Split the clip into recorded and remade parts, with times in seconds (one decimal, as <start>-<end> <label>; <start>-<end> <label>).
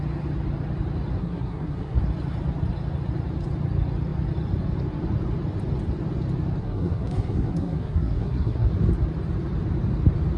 0.0-1.2 recorded; 1.2-2.0 remade; 2.0-6.6 recorded; 6.6-8.7 remade; 8.7-10.4 recorded